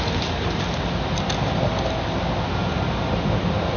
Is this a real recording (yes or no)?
yes